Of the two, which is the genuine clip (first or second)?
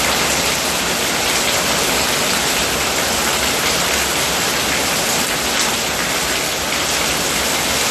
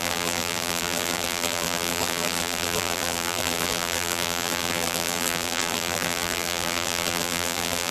first